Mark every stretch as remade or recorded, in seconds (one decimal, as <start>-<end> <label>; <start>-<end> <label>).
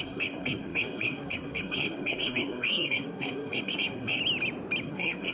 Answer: 0.0-4.2 remade; 4.2-4.8 recorded; 4.8-5.3 remade